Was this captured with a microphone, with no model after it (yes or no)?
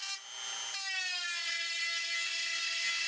yes